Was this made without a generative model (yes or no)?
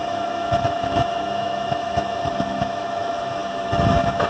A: no